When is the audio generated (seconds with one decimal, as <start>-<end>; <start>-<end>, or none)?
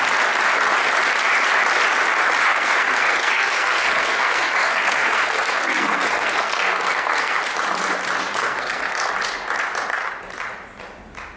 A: 2.5-7.4; 8.4-9.1